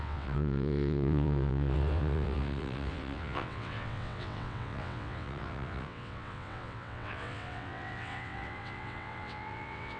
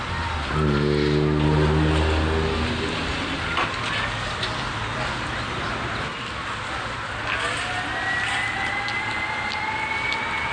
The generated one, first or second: first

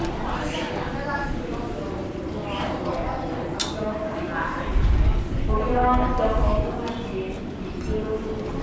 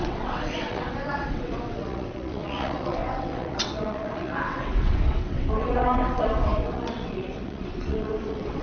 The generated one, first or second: second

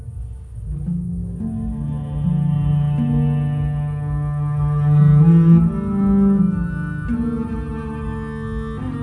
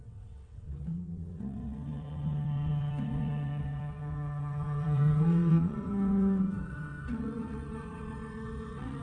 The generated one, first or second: second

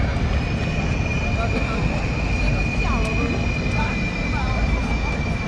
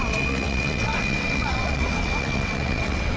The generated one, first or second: second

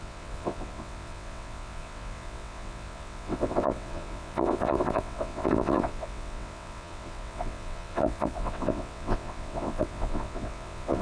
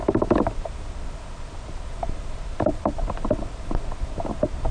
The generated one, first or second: first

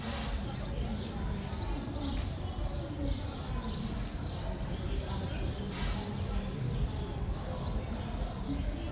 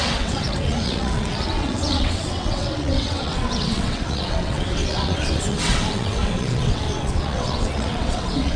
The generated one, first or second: second